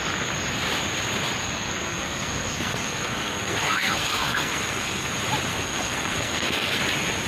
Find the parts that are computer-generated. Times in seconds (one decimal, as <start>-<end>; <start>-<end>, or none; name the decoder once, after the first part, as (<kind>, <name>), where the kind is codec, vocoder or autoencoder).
1.4-5.1 (codec, SNAC); 5.5-6.8